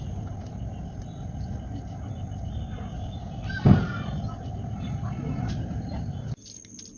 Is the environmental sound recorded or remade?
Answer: recorded